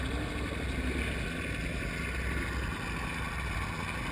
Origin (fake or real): real